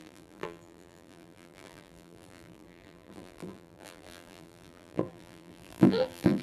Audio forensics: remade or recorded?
remade